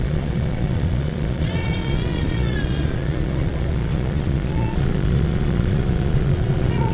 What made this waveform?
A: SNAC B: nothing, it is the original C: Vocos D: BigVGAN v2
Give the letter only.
C